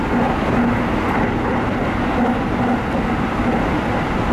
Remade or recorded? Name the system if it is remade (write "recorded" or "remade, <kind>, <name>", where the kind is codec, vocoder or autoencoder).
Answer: recorded